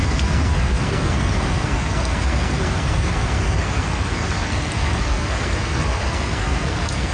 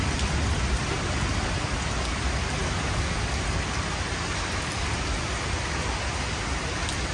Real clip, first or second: second